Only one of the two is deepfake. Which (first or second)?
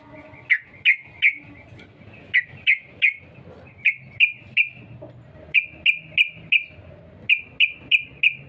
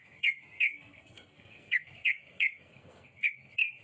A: second